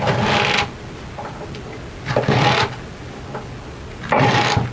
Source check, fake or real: real